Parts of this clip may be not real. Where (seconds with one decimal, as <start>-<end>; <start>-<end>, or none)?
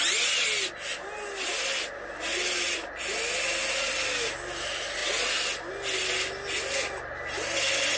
none